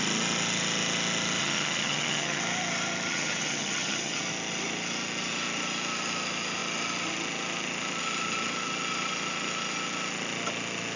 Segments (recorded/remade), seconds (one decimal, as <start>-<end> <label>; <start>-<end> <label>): 0.0-1.4 recorded; 1.4-2.4 remade; 2.4-3.1 recorded; 3.1-4.2 remade; 4.2-11.0 recorded